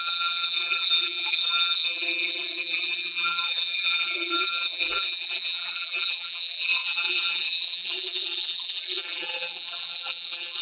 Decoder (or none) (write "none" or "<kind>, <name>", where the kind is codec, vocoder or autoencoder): vocoder, BigVGAN v2